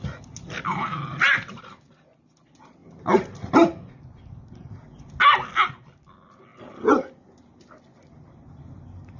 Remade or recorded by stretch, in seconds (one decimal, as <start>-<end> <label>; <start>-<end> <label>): 0.0-9.2 recorded